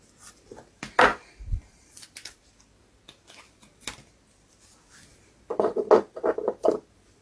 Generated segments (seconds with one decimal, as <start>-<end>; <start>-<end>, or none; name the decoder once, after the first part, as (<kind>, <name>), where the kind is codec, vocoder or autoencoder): 1.1-2.0 (vocoder, BigVGAN v2)